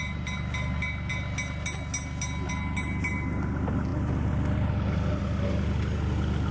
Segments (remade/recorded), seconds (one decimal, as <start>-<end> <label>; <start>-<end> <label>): 0.0-6.5 recorded